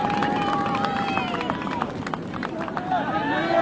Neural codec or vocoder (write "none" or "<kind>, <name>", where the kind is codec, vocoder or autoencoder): vocoder, BigVGAN v2